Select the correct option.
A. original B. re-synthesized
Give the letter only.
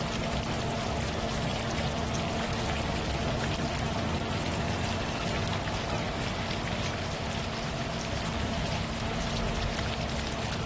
A